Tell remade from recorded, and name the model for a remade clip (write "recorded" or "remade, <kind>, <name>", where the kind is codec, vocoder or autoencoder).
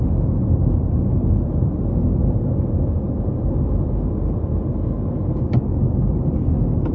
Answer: recorded